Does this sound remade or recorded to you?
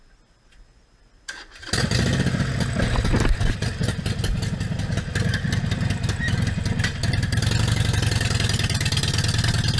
recorded